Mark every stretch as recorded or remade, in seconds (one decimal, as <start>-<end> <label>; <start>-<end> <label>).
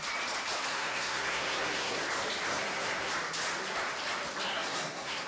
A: 0.0-0.7 recorded; 0.7-2.0 remade; 2.0-2.5 recorded; 2.5-3.1 remade; 3.1-4.5 recorded; 4.5-5.3 remade